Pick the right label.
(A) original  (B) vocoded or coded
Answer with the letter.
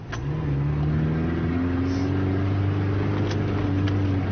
A